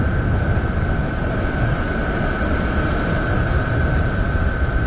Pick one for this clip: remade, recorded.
recorded